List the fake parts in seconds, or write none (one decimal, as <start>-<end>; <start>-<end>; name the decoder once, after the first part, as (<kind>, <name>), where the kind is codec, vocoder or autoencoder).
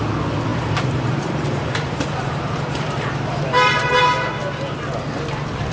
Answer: 0.5-3.9 (vocoder, BigVGAN v2)